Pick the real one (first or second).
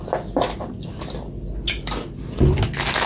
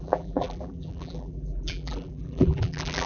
first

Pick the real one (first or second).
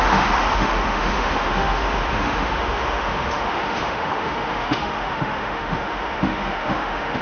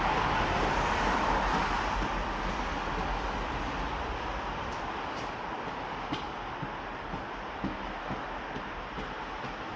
second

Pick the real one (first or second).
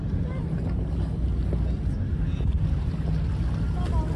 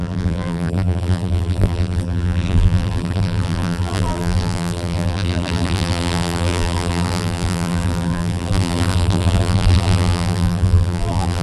first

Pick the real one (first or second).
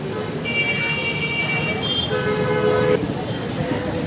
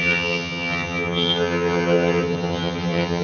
first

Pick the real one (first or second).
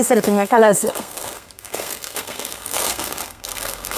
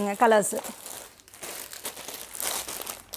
second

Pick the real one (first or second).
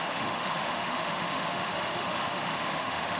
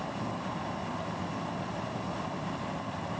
second